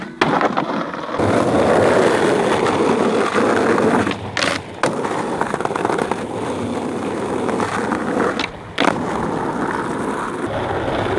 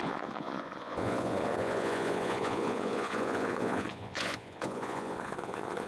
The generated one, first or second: second